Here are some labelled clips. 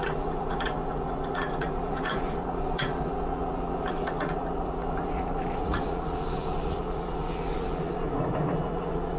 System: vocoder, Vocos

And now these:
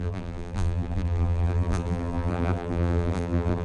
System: vocoder, BigVGAN v2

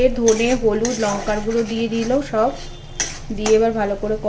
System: none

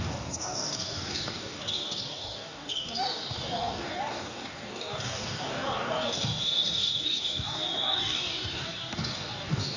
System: codec, DAC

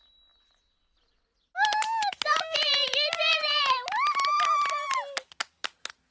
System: none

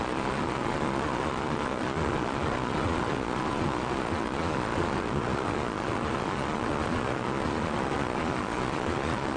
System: vocoder, Vocos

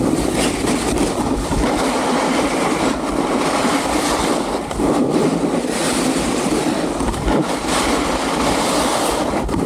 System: none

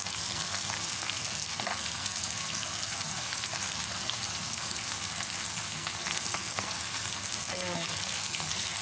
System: codec, SNAC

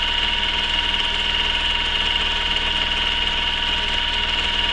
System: none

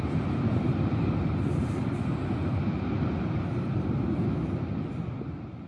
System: none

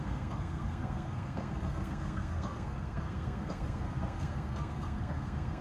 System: codec, SNAC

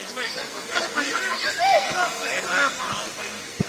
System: codec, SNAC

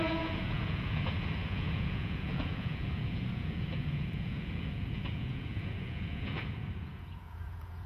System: vocoder, Vocos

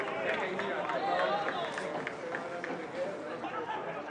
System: none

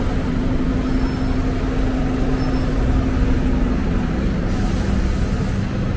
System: none